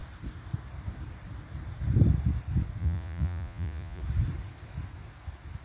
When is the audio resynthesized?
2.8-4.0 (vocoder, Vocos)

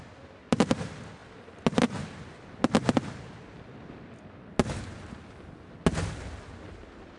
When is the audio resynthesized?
none